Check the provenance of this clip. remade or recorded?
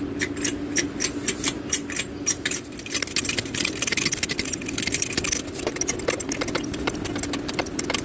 recorded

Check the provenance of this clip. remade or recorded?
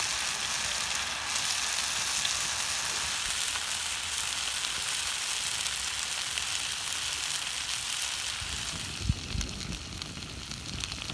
recorded